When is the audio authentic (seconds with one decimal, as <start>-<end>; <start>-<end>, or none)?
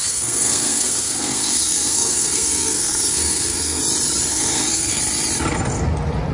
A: 3.8-4.3; 5.0-6.3